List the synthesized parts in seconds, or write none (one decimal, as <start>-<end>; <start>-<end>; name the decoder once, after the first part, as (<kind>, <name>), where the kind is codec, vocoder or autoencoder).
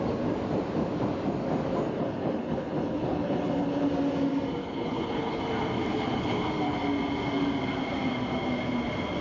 2.0-3.9 (codec, HILCodec); 4.6-5.4; 5.9-6.8